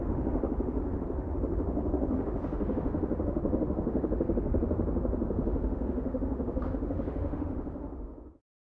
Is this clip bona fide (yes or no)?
no